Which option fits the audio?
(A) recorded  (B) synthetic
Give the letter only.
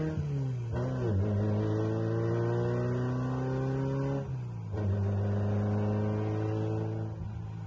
A